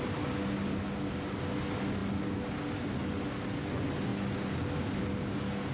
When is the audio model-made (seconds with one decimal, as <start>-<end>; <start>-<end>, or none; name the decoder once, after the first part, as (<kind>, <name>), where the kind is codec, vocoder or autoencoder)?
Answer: none